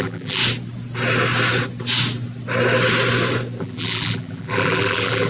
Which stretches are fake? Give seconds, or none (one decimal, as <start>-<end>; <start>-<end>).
0.0-0.4; 3.6-5.3